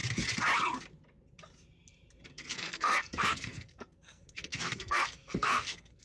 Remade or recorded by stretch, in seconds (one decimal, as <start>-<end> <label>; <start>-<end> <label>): 0.0-2.3 recorded; 2.3-6.0 remade